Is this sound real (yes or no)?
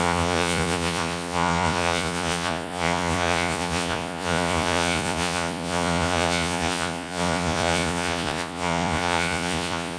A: no